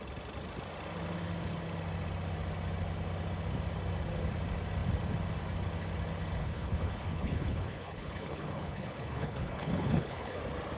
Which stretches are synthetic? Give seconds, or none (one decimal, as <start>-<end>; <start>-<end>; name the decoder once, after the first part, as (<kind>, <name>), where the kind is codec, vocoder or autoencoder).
6.4-10.4 (codec, HILCodec)